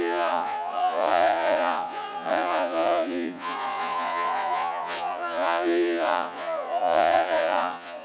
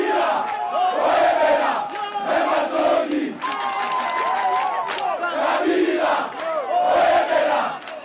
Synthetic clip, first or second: first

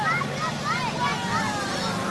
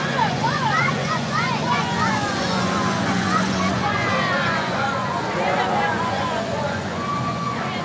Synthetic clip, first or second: second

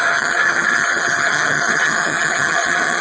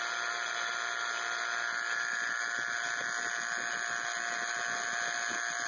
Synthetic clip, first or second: first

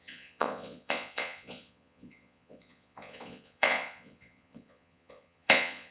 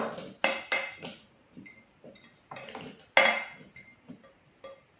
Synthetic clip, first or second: first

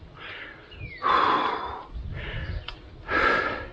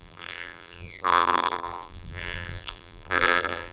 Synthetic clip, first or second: second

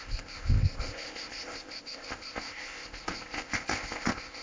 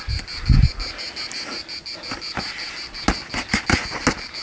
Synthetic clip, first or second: first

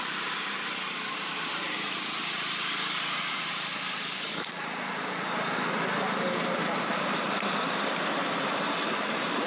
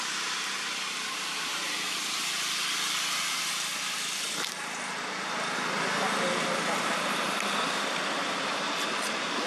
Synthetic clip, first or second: first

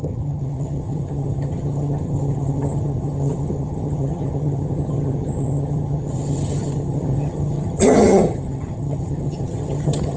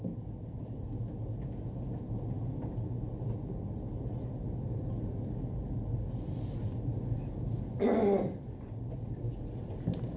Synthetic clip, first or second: first